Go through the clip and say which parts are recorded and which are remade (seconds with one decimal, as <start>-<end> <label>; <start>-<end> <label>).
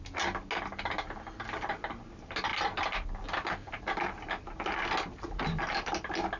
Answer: 0.0-6.4 recorded